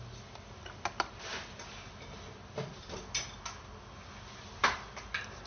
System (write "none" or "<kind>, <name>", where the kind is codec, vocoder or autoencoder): none